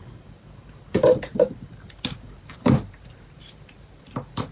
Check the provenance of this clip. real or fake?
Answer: fake